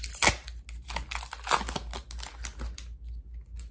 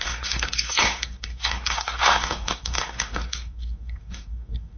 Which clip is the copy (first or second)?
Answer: second